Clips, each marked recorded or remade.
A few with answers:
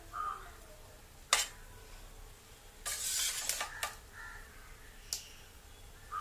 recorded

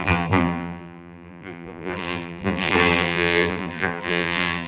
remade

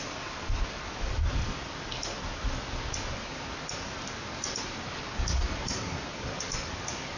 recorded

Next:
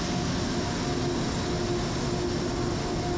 recorded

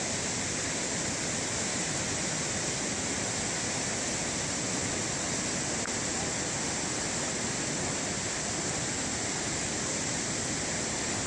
recorded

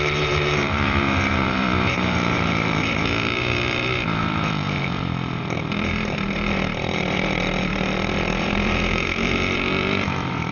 remade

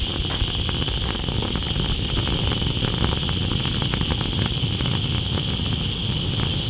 recorded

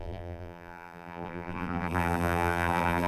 remade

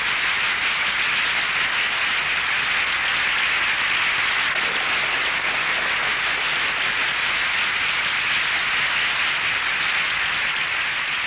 recorded